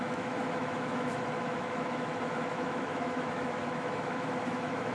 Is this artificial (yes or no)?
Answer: yes